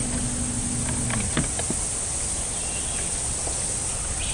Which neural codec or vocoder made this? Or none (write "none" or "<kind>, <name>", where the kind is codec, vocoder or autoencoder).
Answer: none